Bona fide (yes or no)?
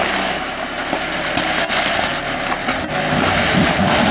yes